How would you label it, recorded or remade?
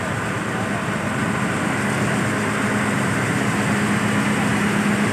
recorded